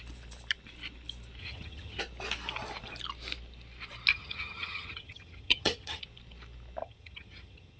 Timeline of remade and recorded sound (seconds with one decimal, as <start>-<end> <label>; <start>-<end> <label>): 0.0-1.4 recorded; 1.4-2.0 remade; 2.0-4.1 recorded; 4.1-6.0 remade; 6.0-6.8 recorded; 6.8-7.8 remade